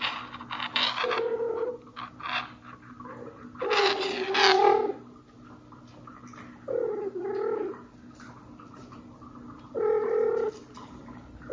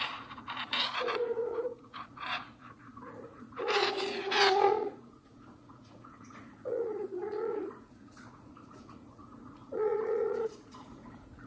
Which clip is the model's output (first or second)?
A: second